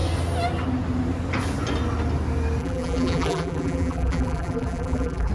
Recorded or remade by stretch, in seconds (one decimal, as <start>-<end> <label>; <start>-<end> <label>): 0.0-2.6 recorded; 2.6-5.3 remade